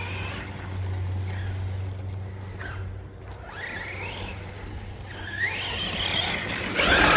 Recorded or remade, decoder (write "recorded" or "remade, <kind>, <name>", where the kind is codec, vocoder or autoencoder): recorded